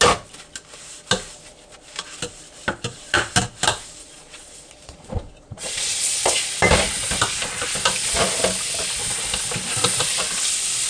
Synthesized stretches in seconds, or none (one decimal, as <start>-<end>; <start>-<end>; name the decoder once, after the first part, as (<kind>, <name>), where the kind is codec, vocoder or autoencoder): 4.0-6.5 (vocoder, Vocos)